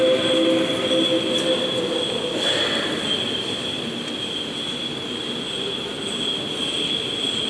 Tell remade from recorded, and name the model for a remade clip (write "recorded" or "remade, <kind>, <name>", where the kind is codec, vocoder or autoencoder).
recorded